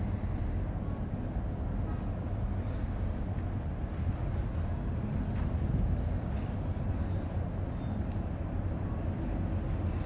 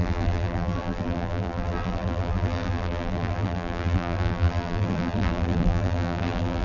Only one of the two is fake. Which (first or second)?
second